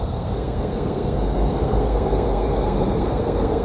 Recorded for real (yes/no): no